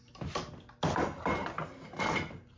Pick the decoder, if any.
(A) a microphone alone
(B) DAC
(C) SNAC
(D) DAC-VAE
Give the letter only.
A